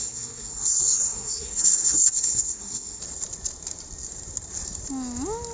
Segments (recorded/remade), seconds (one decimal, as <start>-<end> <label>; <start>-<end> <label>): 0.0-3.0 remade; 3.0-5.5 recorded